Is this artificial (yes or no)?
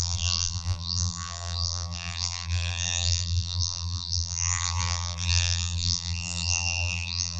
yes